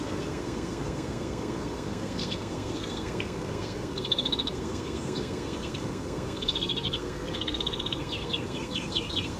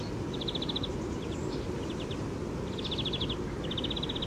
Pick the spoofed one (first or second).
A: first